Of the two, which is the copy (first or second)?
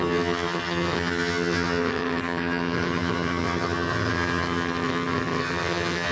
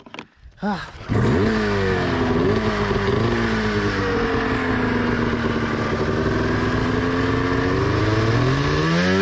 first